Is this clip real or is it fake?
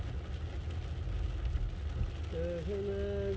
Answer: real